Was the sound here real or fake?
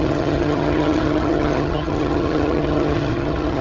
fake